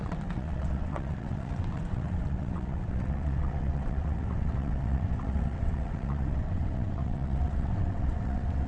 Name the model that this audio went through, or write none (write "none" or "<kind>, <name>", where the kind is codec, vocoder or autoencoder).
vocoder, WaveNeXt